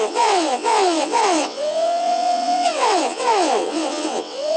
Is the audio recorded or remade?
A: remade